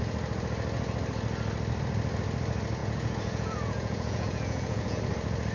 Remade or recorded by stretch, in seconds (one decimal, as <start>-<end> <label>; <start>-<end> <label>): 0.0-2.8 recorded; 2.8-5.0 remade; 5.0-5.5 recorded